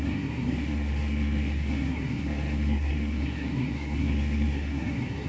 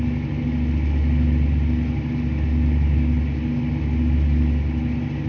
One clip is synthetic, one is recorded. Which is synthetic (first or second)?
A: first